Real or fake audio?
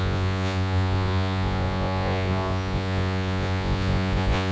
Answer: fake